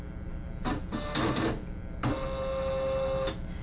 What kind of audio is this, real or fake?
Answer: real